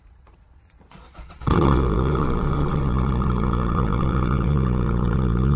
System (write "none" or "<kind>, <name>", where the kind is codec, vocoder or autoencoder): vocoder, Vocos